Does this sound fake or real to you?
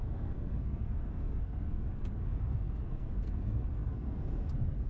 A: fake